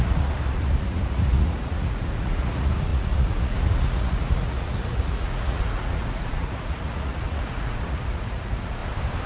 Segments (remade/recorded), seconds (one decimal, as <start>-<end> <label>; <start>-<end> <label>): 0.0-8.8 remade; 8.8-9.3 recorded